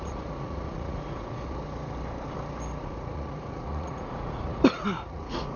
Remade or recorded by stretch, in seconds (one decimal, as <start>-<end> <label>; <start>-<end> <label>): 0.0-1.6 remade; 1.6-2.8 recorded; 2.8-5.6 remade